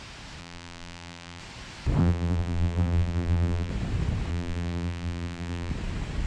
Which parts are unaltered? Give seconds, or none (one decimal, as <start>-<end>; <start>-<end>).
0.0-0.4; 1.4-2.0; 3.7-4.3; 5.7-6.3